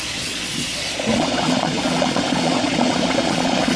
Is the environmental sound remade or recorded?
remade